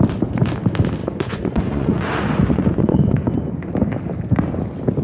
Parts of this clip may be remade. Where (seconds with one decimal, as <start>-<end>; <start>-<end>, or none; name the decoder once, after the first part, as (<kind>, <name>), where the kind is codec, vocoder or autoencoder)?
1.0-3.5 (vocoder, Vocos)